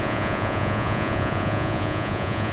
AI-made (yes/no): yes